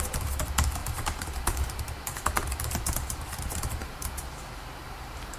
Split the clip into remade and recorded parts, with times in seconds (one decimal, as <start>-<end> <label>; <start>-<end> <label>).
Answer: 0.0-0.8 recorded; 0.8-1.8 remade; 1.8-3.8 recorded; 3.8-4.3 remade; 4.3-4.8 recorded; 4.8-5.4 remade